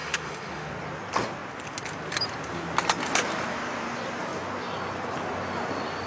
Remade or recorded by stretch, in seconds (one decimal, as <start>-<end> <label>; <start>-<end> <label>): 0.0-0.7 remade; 0.7-6.1 recorded